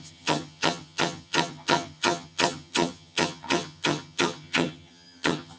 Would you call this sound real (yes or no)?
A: no